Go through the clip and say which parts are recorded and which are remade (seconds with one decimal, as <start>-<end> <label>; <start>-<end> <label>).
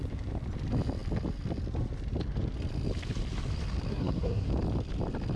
0.0-3.9 recorded; 3.9-4.5 remade; 4.5-5.4 recorded